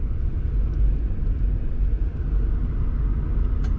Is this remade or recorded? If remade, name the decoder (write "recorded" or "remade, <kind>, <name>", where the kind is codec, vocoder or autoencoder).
recorded